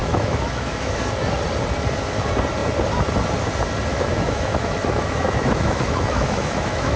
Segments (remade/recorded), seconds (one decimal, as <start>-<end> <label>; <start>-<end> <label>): 0.0-1.0 remade; 1.0-3.9 recorded; 3.9-7.0 remade